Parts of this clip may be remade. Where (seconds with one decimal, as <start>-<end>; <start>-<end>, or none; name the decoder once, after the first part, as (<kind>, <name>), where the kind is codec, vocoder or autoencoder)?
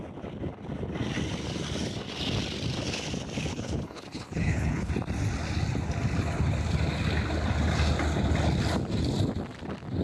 3.5-4.9 (codec, HILCodec)